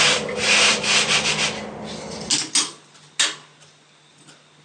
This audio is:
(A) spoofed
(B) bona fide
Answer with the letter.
B